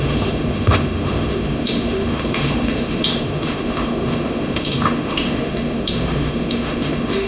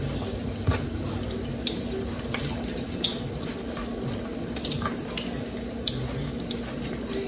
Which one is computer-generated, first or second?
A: first